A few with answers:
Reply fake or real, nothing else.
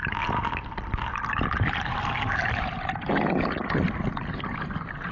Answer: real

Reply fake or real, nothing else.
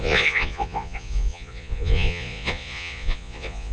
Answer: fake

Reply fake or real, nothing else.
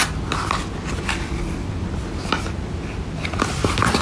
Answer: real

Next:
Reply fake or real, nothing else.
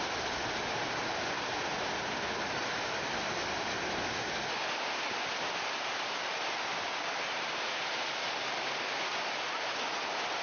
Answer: real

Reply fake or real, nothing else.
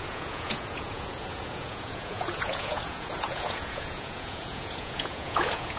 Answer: fake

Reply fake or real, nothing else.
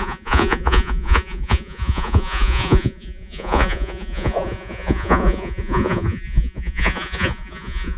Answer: fake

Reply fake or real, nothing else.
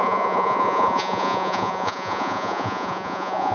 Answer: fake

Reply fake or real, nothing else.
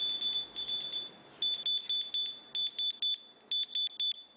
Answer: real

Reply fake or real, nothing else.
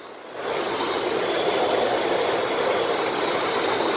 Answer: real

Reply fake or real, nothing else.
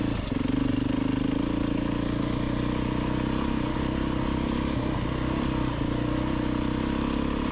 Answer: real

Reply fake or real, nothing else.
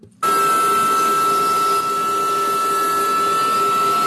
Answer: real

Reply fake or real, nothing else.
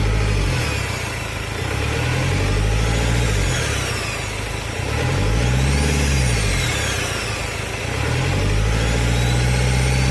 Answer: real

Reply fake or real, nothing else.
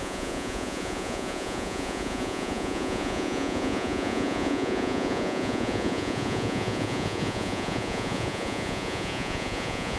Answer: fake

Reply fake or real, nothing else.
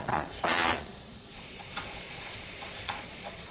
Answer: fake